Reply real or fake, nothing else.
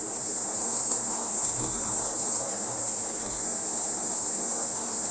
fake